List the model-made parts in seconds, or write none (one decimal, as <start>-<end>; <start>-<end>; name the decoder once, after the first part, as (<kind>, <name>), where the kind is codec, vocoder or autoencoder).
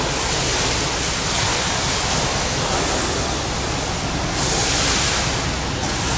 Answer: 1.5-5.2 (vocoder, BigVGAN v2)